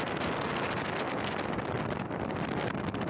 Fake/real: real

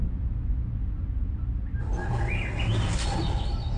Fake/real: real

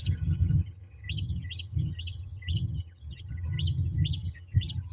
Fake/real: fake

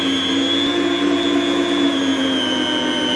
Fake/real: real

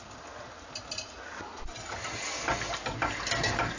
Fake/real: real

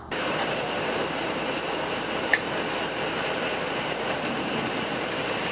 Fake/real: fake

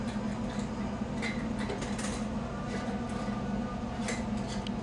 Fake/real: real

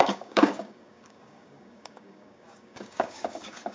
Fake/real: fake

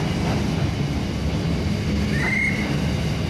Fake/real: real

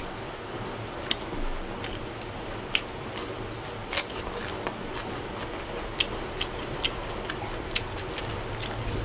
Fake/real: real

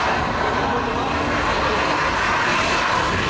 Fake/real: real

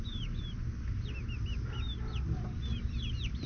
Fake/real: real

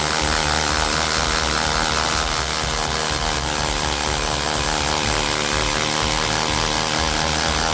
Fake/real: real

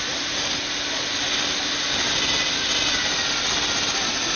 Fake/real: real